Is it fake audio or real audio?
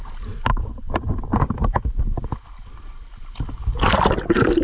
real